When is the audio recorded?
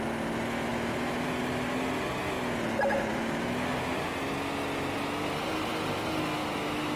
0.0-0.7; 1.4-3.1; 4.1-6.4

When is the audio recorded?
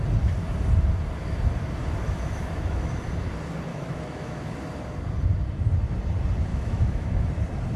0.0-1.8; 3.0-3.7; 4.5-6.5; 7.3-7.8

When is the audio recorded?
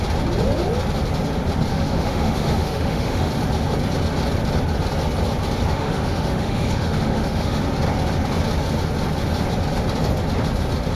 0.0-1.7; 3.3-5.7; 7.6-11.0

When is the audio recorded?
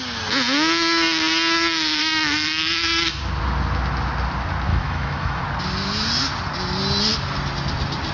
0.0-2.0; 3.2-4.7; 5.4-8.1